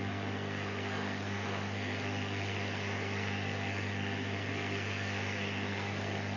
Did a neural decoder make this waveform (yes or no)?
yes